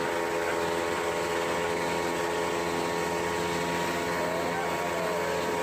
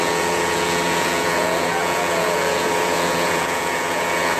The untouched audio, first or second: first